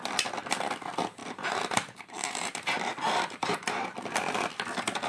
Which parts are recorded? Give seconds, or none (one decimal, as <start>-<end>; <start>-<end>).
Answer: 0.0-1.2; 4.1-5.1